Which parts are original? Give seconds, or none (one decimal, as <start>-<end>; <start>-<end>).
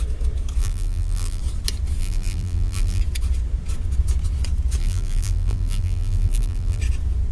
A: 0.0-0.6; 1.4-2.0; 3.0-4.8; 6.8-7.3